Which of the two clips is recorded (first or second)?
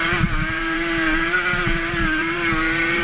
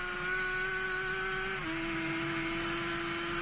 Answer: second